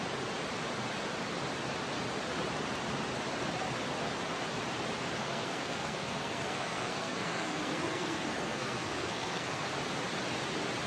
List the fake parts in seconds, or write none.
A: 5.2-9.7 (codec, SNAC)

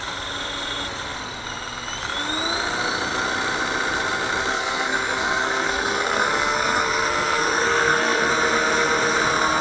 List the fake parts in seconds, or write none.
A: 4.5-8.3 (codec, SNAC)

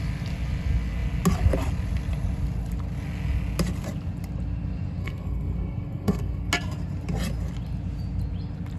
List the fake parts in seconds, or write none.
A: 5.0-6.5 (codec, SNAC)

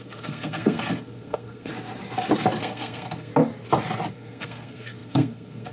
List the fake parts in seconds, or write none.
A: 0.0-1.7 (codec, SNAC); 2.6-3.3; 4.1-5.7

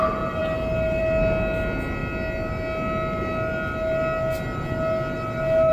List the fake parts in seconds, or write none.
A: none

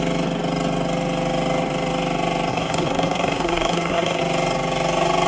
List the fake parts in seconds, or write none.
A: 2.5-4.2 (codec, SNAC)

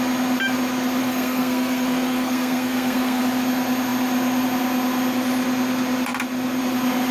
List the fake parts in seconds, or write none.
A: 1.0-3.2 (codec, SNAC)